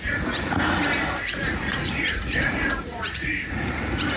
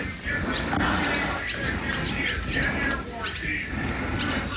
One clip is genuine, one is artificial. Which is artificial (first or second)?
first